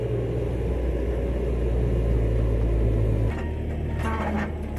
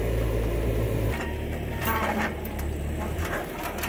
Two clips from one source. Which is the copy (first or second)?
second